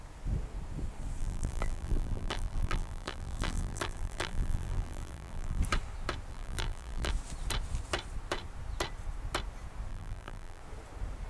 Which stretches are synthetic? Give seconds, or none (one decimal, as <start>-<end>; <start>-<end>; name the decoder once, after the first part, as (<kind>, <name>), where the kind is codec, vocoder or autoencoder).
1.2-5.6 (vocoder, BigVGAN v2); 6.3-7.1; 9.9-10.6